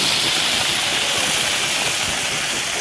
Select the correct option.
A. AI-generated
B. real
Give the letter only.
B